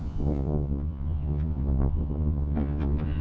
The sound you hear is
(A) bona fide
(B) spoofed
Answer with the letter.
B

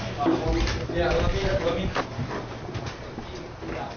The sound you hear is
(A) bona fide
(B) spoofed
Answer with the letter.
A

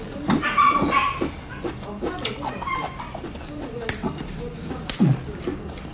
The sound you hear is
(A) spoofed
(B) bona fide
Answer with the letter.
B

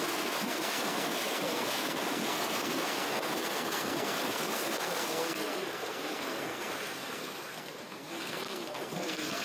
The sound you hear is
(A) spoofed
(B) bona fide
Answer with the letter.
A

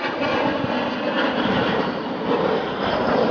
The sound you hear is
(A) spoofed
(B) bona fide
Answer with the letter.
B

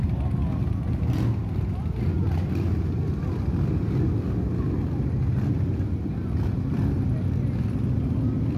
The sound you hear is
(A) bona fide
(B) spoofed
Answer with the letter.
A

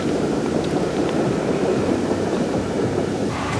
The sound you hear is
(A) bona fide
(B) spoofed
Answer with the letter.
B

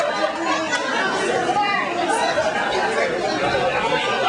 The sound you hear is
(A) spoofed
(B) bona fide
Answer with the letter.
B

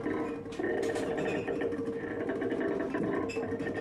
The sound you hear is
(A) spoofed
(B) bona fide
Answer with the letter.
B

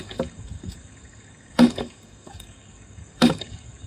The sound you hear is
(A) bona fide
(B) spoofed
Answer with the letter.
B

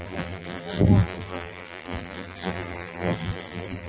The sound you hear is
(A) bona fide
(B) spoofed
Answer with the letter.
B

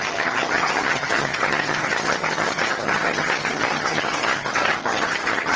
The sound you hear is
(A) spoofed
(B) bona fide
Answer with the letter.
A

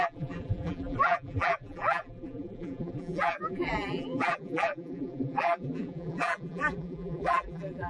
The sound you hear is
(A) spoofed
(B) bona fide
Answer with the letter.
A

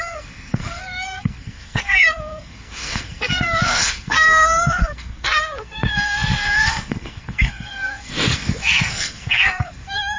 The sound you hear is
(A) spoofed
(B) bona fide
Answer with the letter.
A